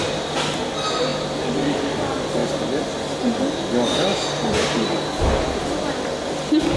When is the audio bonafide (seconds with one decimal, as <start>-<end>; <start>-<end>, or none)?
0.0-1.1; 1.7-2.4; 3.2-4.1; 4.9-6.8